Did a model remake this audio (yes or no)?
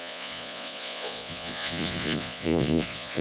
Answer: yes